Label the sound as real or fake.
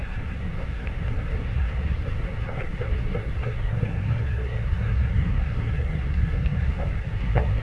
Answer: fake